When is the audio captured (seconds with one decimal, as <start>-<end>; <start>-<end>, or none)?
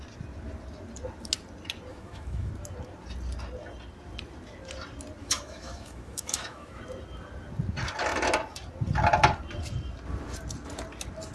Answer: 0.0-1.9; 2.5-5.2; 6.8-11.3